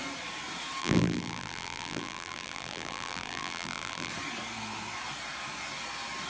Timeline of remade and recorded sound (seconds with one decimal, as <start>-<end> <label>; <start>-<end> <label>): 0.0-0.8 recorded; 0.8-4.1 remade; 4.1-6.3 recorded